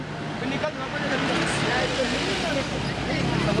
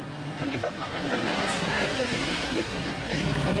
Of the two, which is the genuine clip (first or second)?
first